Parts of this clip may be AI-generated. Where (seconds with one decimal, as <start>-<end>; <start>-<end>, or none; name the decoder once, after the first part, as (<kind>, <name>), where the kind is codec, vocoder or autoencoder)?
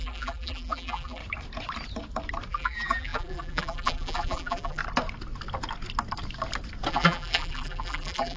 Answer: 0.0-1.2 (vocoder, BigVGAN v2); 2.5-4.8; 6.9-8.4